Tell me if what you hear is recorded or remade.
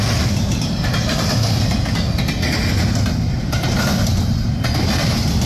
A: recorded